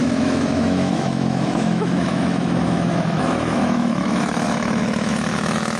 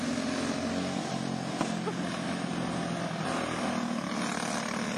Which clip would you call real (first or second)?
second